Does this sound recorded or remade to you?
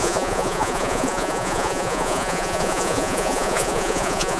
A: remade